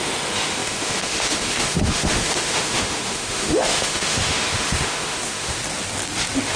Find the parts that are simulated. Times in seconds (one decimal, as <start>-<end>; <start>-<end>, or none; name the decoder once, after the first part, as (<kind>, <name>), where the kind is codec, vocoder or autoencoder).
0.0-5.6 (autoencoder, DAC-VAE)